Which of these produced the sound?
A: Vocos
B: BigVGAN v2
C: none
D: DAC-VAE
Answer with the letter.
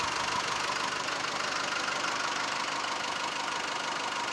C